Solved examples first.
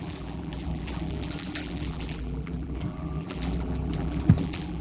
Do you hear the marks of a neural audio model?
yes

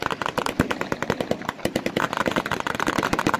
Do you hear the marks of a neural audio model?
yes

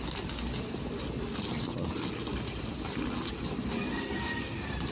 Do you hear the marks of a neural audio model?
no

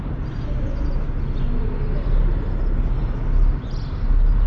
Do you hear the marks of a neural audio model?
no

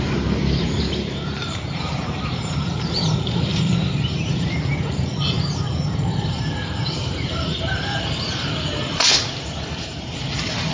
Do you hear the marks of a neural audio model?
yes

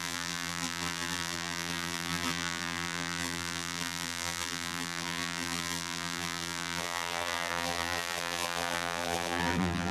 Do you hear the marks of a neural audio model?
yes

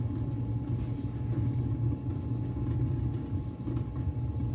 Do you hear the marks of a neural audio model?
no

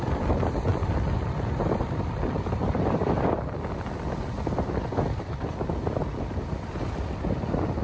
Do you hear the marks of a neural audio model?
yes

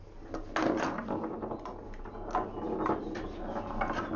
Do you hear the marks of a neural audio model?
no